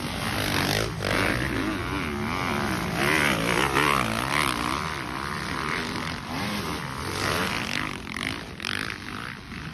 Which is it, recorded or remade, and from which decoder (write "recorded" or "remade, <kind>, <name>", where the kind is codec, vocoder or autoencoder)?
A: recorded